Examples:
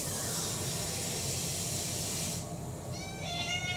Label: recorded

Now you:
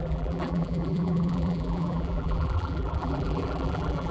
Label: remade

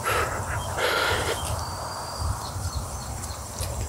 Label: remade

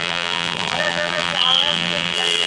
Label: remade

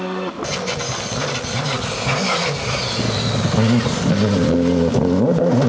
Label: recorded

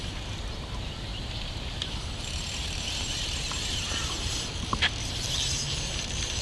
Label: remade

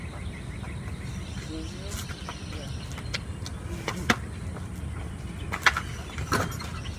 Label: recorded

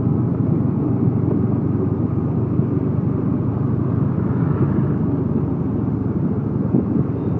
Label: remade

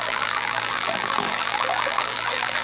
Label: remade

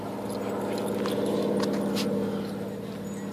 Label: recorded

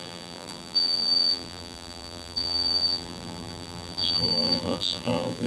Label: remade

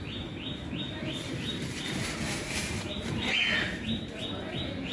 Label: remade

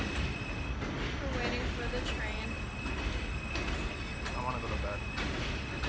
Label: recorded